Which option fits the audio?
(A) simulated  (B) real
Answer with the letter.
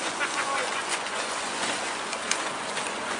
A